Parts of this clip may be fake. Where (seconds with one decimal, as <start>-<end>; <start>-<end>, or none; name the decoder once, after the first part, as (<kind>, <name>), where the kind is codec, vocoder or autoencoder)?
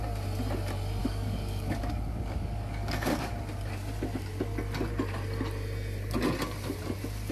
1.0-3.3 (codec, DAC)